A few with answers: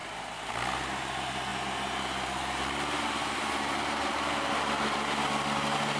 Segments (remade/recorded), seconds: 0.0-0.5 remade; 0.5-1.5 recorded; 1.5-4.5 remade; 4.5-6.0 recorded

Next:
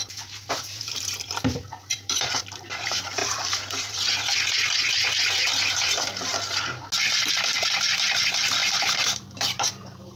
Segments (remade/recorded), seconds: 0.0-3.2 remade; 3.2-7.3 recorded; 7.3-10.2 remade

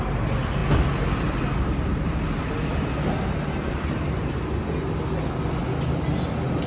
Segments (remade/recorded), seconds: 0.0-6.7 recorded

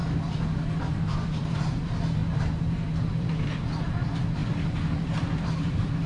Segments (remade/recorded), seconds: 0.0-0.8 recorded; 0.8-4.4 remade; 4.4-5.2 recorded; 5.2-6.1 remade

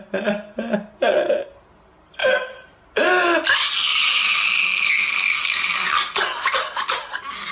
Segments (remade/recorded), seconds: 0.0-2.2 recorded; 2.2-3.1 remade; 3.1-3.9 recorded; 3.9-4.6 remade; 4.6-7.5 recorded

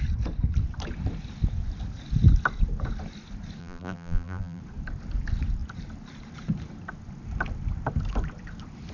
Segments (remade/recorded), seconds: 0.0-3.6 recorded; 3.6-4.6 remade; 4.6-8.9 recorded